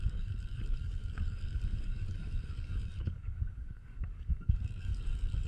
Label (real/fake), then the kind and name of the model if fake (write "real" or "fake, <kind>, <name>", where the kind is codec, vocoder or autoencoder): fake, codec, DAC